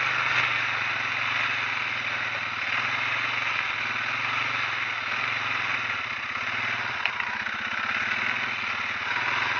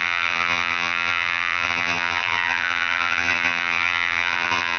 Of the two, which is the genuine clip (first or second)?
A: first